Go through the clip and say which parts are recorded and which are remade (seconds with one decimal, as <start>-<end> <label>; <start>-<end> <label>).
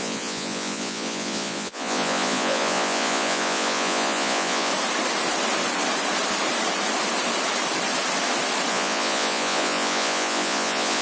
0.0-4.7 remade; 4.7-8.7 recorded; 8.7-11.0 remade